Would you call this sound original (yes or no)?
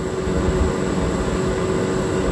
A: yes